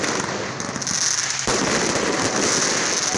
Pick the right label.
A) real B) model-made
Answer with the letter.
A